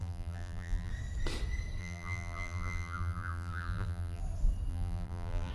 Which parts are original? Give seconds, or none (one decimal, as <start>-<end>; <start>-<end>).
0.9-1.8; 4.2-4.7